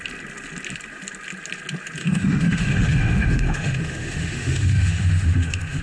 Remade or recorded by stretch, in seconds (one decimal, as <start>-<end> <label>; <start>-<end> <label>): 0.0-2.0 recorded; 2.0-5.8 remade